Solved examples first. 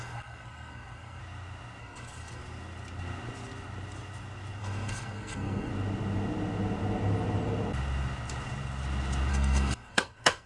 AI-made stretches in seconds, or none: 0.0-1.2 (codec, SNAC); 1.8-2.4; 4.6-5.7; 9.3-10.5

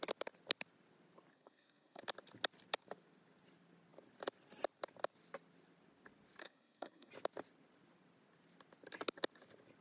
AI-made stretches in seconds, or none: 1.3-2.0 (codec, SNAC); 6.4-7.1

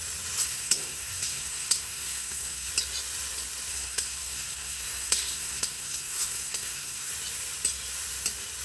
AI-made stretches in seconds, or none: 0.4-2.7 (codec, SNAC); 3.7-7.1

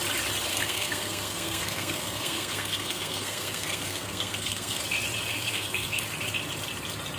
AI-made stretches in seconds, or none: 0.5-4.8 (codec, SNAC); 5.3-6.0

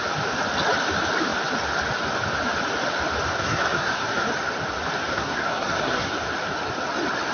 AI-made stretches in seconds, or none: 3.3-4.3 (codec, SNAC); 5.1-6.1

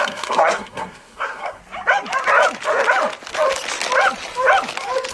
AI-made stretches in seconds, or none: 0.0-1.6 (codec, SNAC)